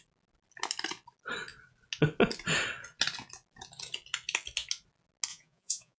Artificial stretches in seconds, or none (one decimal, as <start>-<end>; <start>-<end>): 5.3-6.0